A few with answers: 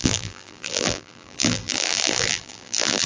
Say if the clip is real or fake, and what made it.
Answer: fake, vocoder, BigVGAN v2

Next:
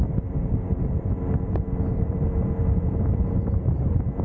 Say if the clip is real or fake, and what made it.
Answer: fake, vocoder, BigVGAN v2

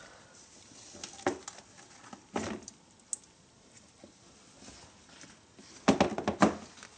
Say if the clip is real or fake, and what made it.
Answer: real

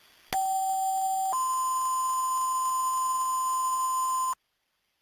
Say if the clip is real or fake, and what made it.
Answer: real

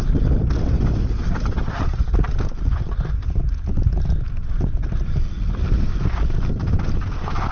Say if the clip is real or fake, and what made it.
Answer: real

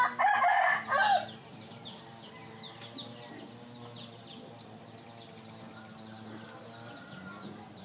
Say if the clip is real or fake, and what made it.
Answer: real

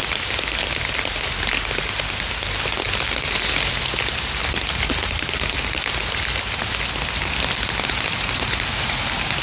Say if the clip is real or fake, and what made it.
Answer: real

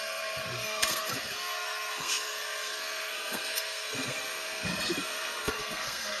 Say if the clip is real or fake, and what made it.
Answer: fake, codec, SNAC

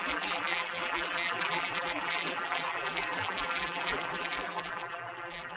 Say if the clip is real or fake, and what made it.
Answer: fake, vocoder, BigVGAN v2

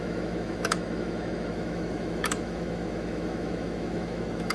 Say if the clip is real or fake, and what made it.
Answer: fake, autoencoder, DAC-VAE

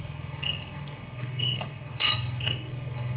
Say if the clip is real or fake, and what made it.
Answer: fake, codec, SNAC